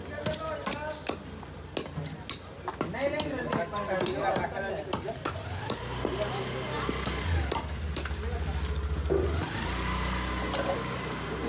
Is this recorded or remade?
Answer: recorded